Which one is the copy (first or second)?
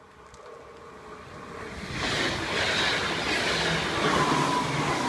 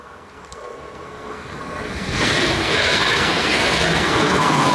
second